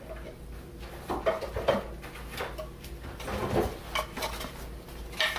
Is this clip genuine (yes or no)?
yes